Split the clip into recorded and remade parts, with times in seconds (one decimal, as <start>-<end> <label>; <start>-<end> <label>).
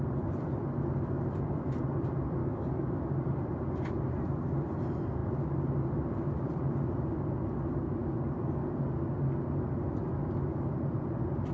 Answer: 0.0-2.4 recorded; 2.4-3.1 remade; 3.1-11.5 recorded